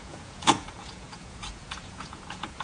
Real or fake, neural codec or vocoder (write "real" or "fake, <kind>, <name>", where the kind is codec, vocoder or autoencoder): fake, vocoder, Vocos